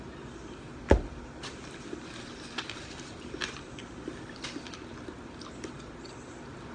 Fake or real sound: real